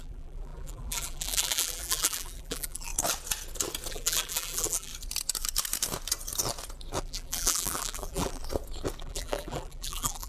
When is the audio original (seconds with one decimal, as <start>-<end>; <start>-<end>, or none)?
2.9-3.9; 4.9-7.0; 8.4-9.0